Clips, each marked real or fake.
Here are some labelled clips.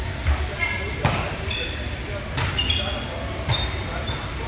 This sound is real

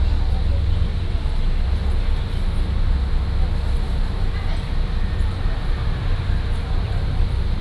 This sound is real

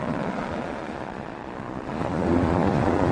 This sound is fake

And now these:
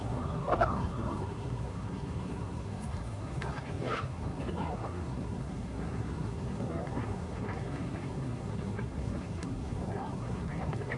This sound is fake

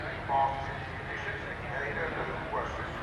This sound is real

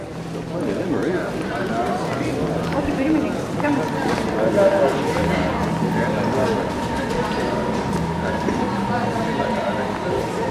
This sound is real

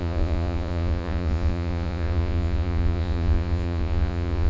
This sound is fake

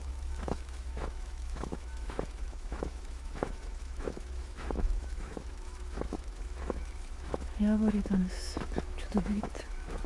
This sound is fake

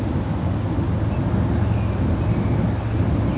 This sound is real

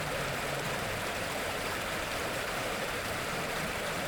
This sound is fake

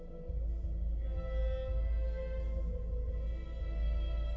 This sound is real